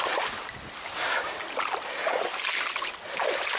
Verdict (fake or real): real